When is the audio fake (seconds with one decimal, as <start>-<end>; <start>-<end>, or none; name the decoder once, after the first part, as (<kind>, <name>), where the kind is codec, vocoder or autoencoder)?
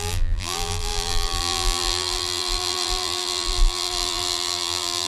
0.0-5.1 (vocoder, BigVGAN v2)